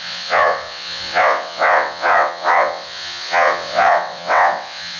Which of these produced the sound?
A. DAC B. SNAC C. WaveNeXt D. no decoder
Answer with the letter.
C